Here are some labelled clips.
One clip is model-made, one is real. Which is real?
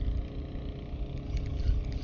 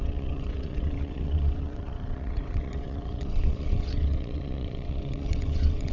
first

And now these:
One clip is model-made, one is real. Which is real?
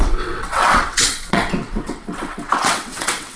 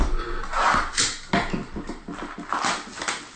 second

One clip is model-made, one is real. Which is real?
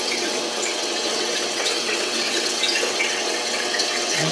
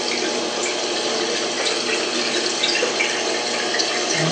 second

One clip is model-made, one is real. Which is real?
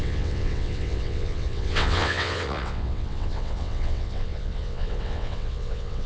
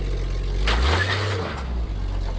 second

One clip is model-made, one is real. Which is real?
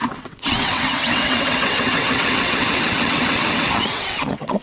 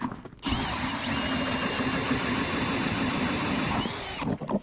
second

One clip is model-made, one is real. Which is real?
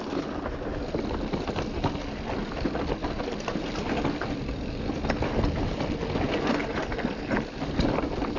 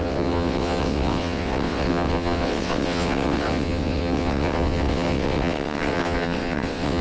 first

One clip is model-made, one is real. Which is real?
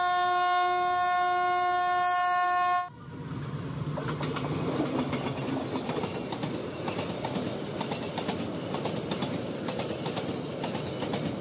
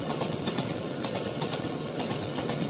first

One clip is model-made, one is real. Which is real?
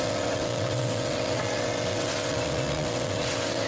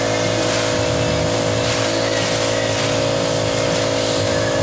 second